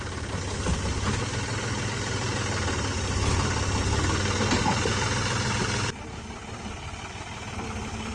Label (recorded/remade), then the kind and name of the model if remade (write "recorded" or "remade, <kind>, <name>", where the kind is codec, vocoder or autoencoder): recorded